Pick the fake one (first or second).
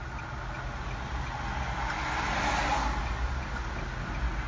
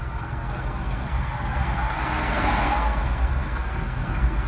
second